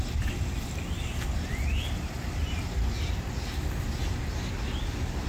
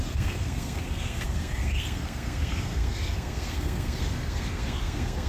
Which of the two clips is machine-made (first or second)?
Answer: second